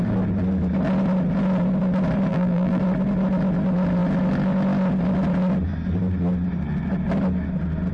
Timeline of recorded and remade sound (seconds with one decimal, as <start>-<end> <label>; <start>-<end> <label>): 0.0-2.3 recorded; 2.3-2.8 remade; 2.8-7.9 recorded